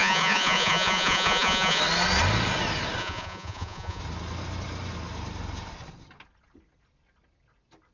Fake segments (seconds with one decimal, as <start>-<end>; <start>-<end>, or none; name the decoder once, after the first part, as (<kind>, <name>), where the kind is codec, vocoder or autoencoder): 0.0-1.8 (vocoder, Vocos); 3.0-4.0